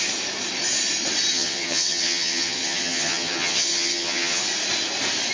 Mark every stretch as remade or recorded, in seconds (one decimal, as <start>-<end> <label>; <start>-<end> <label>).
0.0-1.3 recorded; 1.3-4.4 remade; 4.4-5.3 recorded